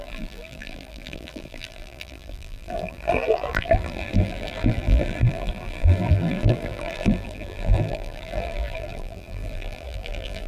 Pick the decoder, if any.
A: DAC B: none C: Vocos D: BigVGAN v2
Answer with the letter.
D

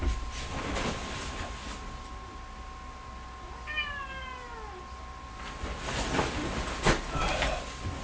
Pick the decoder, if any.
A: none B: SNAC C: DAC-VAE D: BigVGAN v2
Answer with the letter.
A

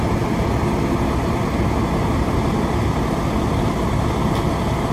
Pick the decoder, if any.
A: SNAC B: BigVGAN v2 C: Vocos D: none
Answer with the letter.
D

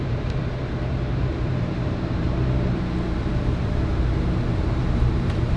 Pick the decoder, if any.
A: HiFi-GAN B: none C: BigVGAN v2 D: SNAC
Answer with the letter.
C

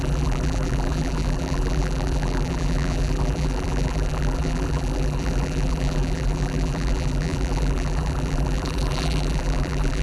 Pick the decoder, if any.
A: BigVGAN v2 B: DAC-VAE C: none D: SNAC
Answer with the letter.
A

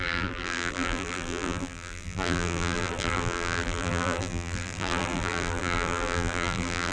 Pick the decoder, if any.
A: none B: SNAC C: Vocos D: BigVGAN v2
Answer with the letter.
D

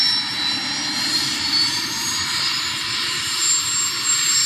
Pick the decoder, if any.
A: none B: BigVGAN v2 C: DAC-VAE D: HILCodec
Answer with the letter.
B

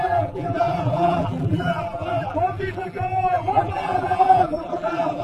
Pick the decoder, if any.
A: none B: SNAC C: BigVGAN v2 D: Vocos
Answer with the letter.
C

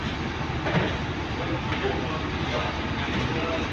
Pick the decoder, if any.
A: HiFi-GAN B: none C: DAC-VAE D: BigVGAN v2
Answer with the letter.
B